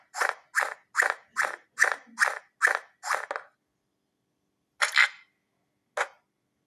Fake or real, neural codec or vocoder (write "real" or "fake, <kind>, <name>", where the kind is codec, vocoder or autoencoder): real